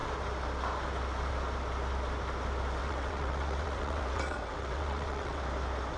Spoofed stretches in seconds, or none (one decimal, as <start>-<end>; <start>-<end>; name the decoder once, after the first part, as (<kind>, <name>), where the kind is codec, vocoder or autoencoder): 2.8-5.4 (vocoder, WaveNeXt)